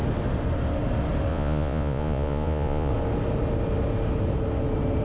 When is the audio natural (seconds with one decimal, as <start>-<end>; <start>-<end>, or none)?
0.0-1.3; 2.9-5.0